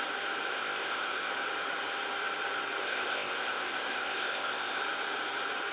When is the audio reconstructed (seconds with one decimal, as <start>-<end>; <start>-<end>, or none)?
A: 0.5-1.3; 2.8-4.8